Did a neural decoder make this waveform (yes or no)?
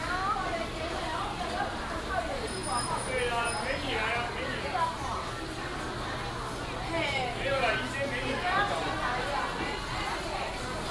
no